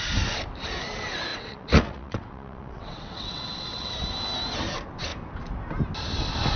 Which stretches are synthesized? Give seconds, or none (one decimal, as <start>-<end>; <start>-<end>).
1.3-3.9